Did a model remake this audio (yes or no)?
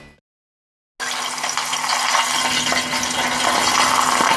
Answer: no